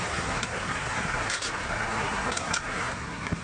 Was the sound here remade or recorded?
remade